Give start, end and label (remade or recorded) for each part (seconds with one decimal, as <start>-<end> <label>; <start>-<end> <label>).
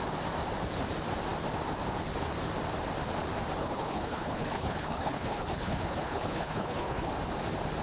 0.0-3.6 recorded; 3.6-7.1 remade; 7.1-7.8 recorded